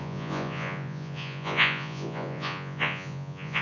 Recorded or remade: remade